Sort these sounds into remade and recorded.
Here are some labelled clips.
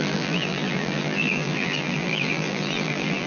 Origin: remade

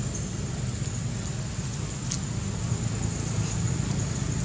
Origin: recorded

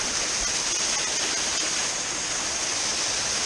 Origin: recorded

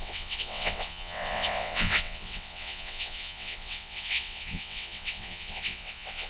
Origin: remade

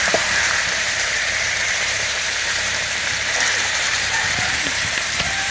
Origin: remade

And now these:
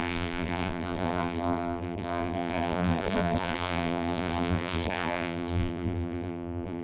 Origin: remade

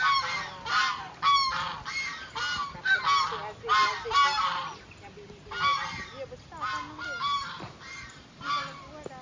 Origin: recorded